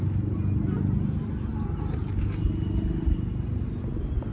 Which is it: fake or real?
real